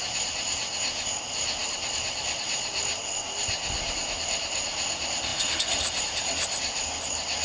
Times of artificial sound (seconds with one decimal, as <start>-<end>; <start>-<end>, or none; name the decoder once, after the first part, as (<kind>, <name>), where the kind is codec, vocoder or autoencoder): 1.6-3.0 (vocoder, BigVGAN v2)